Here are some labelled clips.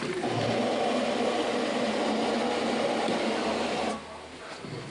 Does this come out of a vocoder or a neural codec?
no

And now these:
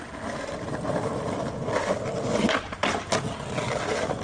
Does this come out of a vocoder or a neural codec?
no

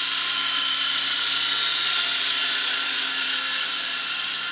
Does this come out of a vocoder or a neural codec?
no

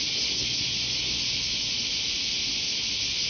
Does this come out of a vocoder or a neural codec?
no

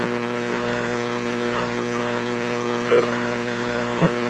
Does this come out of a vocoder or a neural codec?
yes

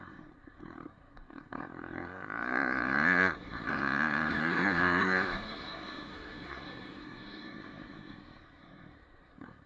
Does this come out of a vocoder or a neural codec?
yes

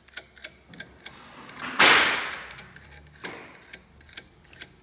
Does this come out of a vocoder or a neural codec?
no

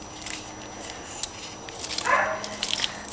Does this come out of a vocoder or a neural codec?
no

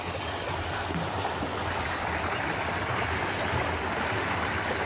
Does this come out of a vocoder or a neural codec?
no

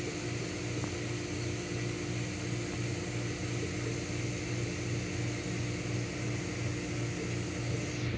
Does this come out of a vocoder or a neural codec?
no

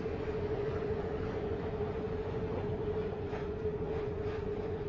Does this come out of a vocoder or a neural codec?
yes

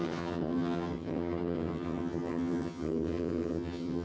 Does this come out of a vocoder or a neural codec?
yes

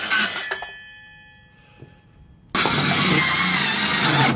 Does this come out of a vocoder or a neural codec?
no